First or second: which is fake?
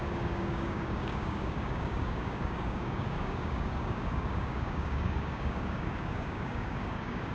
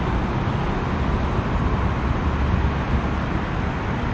first